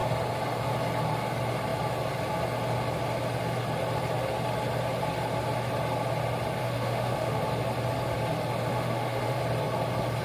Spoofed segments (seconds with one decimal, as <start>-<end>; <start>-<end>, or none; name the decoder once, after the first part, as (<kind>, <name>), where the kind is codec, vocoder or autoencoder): 6.6-7.4 (autoencoder, DAC-VAE); 8.7-9.4